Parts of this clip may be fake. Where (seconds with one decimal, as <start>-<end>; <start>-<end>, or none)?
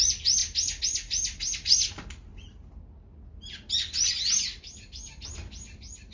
none